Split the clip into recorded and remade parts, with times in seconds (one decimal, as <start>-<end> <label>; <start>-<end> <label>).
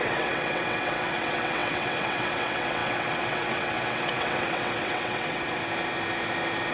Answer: 0.0-5.6 remade; 5.6-6.7 recorded